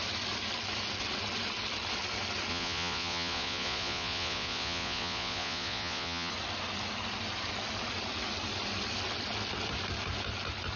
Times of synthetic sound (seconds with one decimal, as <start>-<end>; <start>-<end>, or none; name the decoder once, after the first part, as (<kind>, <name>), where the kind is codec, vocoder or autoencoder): 2.5-6.3 (vocoder, Vocos)